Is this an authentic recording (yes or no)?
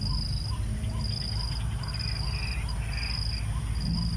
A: yes